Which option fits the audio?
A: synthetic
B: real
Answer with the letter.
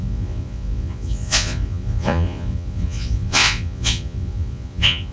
A